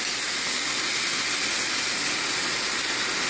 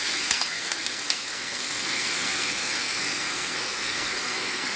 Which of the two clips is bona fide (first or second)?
first